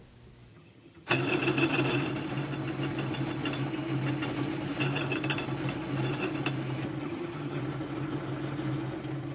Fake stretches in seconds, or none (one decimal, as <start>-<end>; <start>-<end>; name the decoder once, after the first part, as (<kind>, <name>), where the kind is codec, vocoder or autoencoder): 0.5-1.2 (vocoder, HiFi-GAN); 7.0-7.6